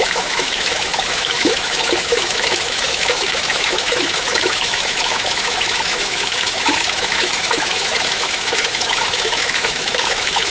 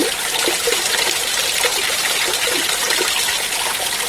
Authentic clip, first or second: second